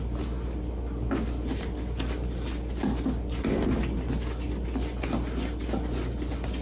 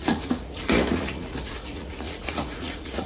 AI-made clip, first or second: second